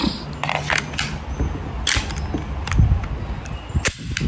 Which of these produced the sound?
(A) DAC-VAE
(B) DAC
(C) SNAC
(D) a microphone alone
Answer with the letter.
D